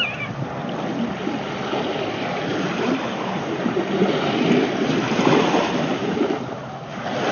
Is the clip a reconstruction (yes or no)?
no